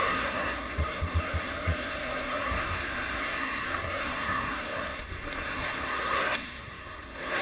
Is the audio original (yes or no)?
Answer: no